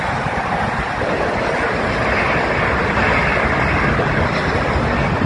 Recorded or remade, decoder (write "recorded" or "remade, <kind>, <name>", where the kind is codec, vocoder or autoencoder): recorded